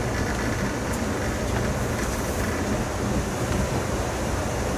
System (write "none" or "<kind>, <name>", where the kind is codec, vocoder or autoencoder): none